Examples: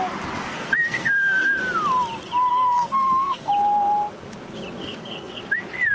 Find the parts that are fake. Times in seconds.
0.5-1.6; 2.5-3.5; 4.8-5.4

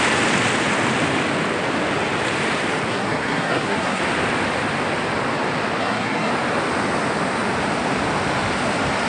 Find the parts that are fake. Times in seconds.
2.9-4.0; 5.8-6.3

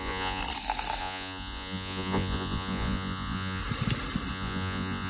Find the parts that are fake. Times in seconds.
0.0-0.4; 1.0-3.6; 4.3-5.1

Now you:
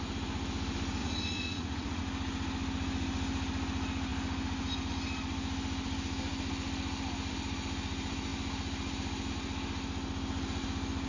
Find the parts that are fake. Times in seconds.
1.0-2.0

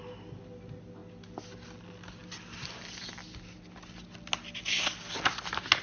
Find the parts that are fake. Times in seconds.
none